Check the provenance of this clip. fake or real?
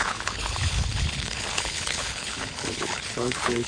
fake